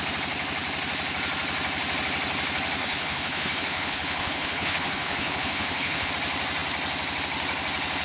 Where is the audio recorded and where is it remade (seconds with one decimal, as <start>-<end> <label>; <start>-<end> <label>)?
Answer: 0.0-2.8 recorded; 2.8-6.1 remade; 6.1-8.0 recorded